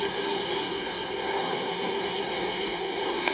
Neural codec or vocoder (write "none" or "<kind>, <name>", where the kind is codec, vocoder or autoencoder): codec, SNAC